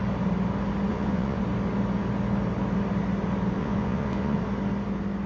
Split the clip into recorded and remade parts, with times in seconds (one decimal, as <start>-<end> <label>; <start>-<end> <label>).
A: 0.0-0.9 recorded; 0.9-1.4 remade; 1.4-3.6 recorded; 3.6-4.4 remade; 4.4-5.3 recorded